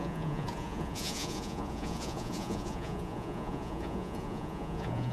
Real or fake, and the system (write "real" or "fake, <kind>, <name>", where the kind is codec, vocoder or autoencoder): fake, vocoder, Vocos